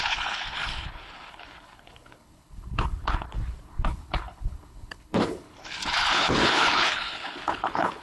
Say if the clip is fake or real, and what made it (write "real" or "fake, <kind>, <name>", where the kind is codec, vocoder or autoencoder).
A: fake, codec, HILCodec